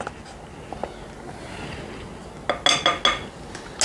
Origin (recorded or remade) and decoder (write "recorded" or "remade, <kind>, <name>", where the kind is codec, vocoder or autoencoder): recorded